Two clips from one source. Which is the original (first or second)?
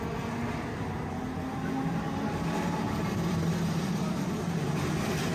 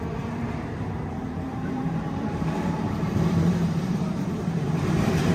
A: first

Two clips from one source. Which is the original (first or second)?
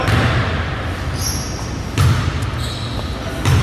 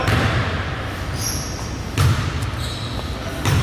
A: first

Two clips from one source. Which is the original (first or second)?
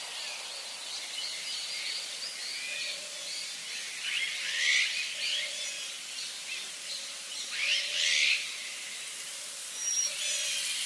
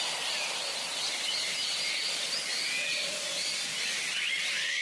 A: first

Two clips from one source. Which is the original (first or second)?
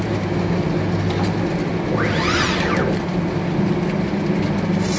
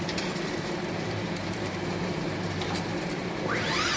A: first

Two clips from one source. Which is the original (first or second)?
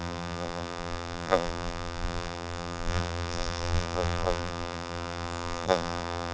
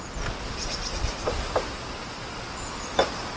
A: second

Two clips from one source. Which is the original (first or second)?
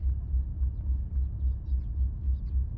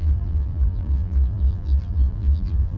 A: first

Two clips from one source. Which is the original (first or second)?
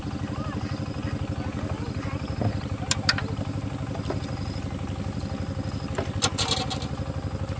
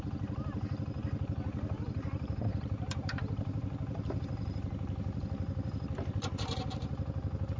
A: first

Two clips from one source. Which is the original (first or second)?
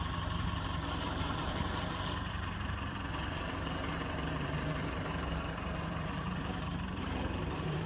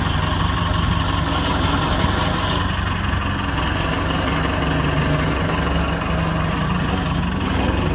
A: second